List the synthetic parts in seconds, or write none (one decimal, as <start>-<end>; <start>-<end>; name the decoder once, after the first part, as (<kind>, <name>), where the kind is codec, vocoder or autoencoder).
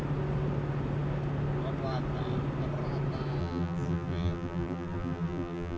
3.4-5.8 (vocoder, BigVGAN v2)